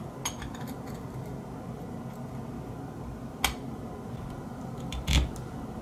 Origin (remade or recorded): recorded